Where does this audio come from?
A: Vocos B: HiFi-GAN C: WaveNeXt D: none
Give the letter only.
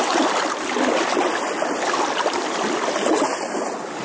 D